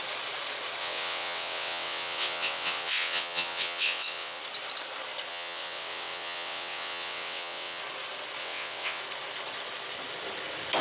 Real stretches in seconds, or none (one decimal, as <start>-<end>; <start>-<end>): 0.0-0.8; 4.4-5.3; 7.8-8.4; 9.0-10.8